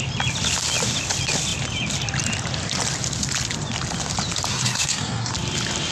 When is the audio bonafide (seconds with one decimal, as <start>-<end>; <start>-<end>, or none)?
0.0-4.5; 5.3-5.9